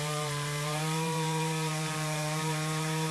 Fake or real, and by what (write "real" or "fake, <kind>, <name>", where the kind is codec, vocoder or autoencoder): fake, vocoder, BigVGAN v2